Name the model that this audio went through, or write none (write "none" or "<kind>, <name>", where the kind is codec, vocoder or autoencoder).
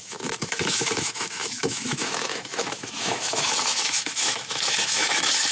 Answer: autoencoder, DAC-VAE